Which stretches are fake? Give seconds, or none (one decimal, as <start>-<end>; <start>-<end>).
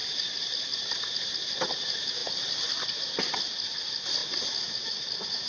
none